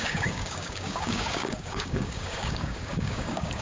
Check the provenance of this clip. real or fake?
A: fake